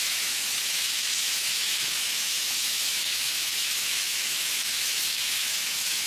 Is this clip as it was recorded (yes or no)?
no